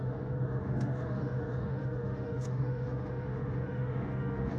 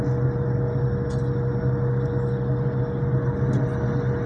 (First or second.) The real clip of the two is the second